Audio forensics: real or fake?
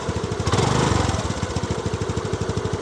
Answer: real